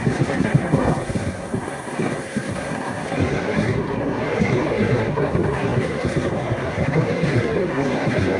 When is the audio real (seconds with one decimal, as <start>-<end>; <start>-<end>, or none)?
none